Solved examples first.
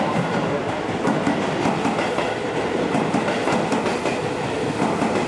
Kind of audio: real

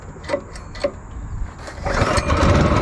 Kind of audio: real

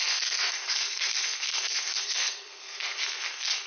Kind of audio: fake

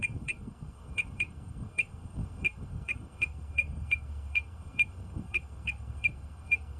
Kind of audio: fake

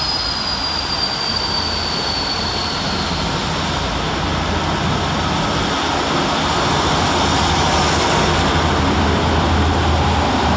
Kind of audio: real